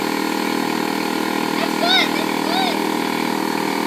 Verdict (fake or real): real